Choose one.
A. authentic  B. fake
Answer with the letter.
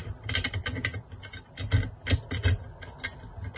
A